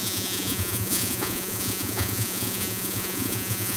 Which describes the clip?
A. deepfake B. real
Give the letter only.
A